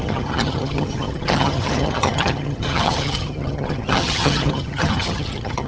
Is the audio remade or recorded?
remade